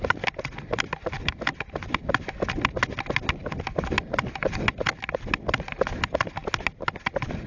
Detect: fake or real real